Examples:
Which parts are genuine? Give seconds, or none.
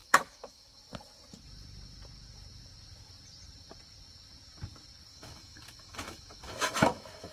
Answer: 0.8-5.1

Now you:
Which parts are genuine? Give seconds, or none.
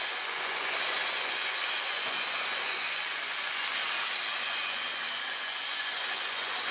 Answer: 3.8-4.4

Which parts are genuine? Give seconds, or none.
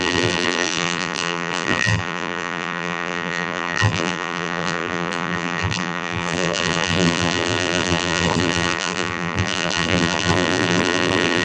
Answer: none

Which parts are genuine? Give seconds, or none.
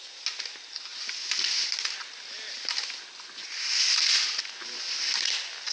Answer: 0.0-5.7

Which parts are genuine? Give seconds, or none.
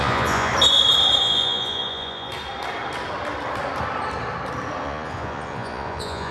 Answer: 0.5-1.2; 2.3-4.8